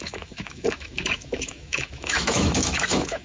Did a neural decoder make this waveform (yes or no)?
yes